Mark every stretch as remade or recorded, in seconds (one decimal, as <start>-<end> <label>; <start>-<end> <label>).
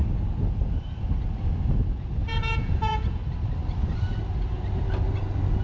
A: 0.0-2.2 recorded; 2.2-3.2 remade; 3.2-5.6 recorded